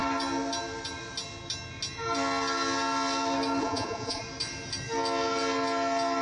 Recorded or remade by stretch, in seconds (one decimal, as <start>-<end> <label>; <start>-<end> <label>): 0.0-3.6 recorded; 3.6-4.2 remade; 4.2-6.2 recorded